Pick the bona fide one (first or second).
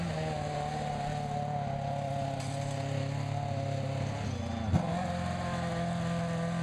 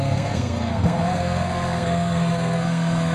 first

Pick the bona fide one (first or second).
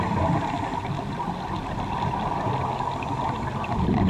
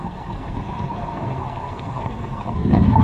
first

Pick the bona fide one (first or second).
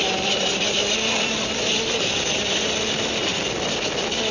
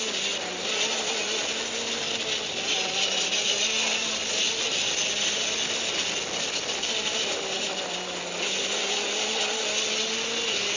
second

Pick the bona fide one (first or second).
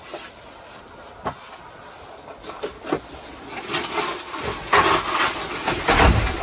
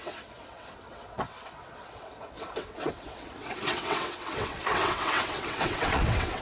first